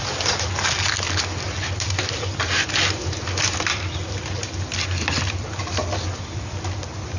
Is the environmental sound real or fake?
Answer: real